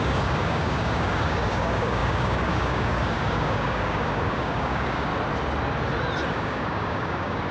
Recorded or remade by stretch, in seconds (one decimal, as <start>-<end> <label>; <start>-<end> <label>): 0.0-5.1 remade; 5.1-6.3 recorded; 6.3-7.5 remade